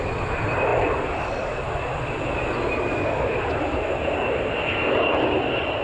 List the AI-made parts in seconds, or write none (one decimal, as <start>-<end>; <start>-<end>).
none